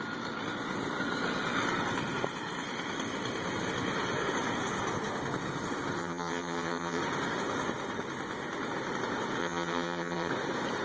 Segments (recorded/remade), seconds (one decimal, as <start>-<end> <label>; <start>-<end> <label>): 0.0-6.0 recorded; 6.0-7.0 remade; 7.0-9.4 recorded; 9.4-10.3 remade; 10.3-10.8 recorded